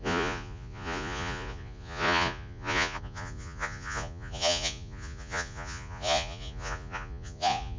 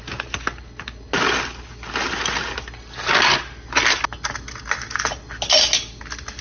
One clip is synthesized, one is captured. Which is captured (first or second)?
second